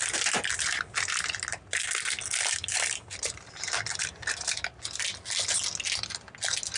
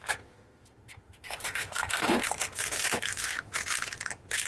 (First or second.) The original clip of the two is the first